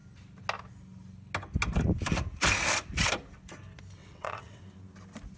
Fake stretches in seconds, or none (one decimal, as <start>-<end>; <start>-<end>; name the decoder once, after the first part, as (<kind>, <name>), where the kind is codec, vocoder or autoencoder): 4.0-4.6 (vocoder, WaveNeXt)